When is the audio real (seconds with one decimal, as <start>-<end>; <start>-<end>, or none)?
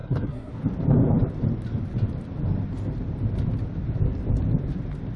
0.5-5.2